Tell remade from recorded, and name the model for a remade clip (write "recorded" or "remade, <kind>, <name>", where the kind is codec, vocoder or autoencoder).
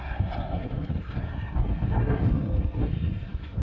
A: remade, codec, SNAC